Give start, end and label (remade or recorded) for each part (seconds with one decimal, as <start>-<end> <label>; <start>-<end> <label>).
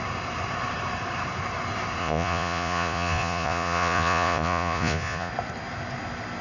0.0-2.0 recorded; 2.0-5.3 remade; 5.3-6.4 recorded